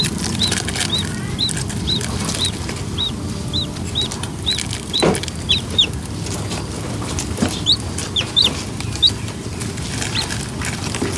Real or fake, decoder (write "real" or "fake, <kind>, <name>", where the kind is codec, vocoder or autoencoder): real